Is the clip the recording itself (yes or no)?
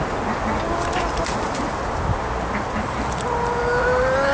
yes